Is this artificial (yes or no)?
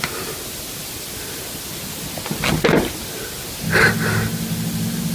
no